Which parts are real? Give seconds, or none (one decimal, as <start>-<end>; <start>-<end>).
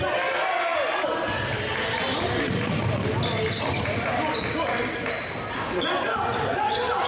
0.0-7.1